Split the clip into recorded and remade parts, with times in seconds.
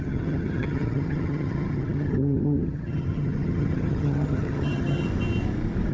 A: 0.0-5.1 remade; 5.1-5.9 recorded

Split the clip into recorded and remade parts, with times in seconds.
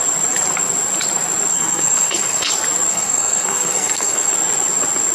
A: 0.0-1.5 recorded; 1.5-2.5 remade; 2.5-2.9 recorded; 2.9-4.3 remade; 4.3-5.1 recorded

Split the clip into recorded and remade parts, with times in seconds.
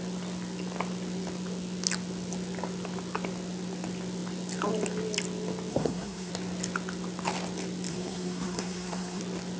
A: 0.0-5.7 recorded; 5.7-6.3 remade; 6.3-7.9 recorded; 7.9-9.2 remade; 9.2-9.6 recorded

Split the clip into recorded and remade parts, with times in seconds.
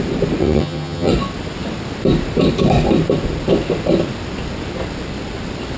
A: 0.0-0.4 recorded; 0.4-1.1 remade; 1.1-5.8 recorded